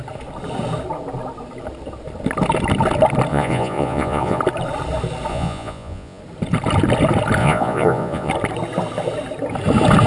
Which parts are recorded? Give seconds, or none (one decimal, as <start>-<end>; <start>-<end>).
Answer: 0.0-3.3; 4.4-5.3; 6.2-7.4; 8.3-10.1